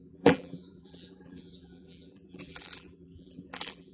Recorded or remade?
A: remade